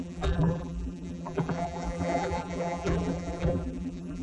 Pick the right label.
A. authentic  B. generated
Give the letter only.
B